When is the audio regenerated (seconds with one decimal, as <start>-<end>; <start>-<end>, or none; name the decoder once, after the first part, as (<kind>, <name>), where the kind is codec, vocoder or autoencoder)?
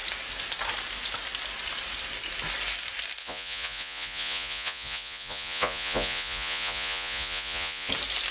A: 3.2-7.9 (vocoder, Vocos)